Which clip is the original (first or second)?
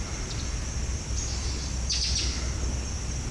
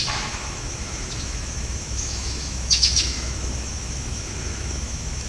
first